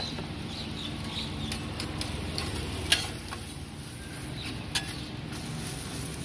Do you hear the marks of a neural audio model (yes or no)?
no